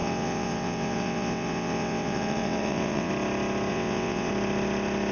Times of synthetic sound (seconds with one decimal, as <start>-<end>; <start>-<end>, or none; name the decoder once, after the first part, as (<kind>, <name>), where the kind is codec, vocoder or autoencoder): 0.0-3.1 (vocoder, WaveNeXt); 3.7-4.3